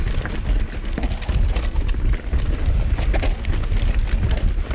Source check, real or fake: real